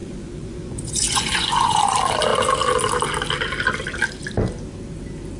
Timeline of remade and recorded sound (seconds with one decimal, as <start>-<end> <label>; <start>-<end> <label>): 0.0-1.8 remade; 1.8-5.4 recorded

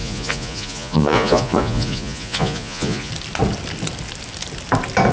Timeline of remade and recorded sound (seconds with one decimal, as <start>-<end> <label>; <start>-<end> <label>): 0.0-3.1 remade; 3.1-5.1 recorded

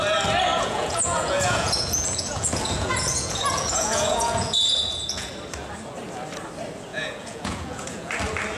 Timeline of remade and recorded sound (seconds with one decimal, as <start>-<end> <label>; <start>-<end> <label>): 0.0-0.5 recorded; 0.5-5.3 remade; 5.3-6.9 recorded; 6.9-8.1 remade; 8.1-8.6 recorded

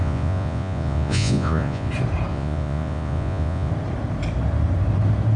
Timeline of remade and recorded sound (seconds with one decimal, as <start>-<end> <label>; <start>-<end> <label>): 0.0-1.9 remade; 1.9-2.3 recorded; 2.3-3.7 remade; 3.7-5.4 recorded